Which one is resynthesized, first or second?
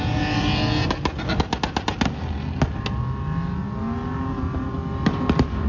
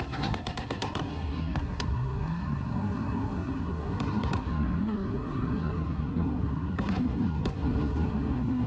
second